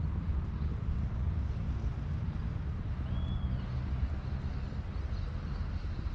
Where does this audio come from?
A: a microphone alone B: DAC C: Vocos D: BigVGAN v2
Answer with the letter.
A